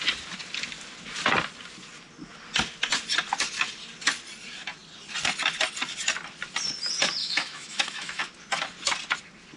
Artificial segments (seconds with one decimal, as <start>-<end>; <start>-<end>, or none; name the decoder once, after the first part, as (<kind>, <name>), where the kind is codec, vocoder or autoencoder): 7.2-8.2 (autoencoder, DAC-VAE)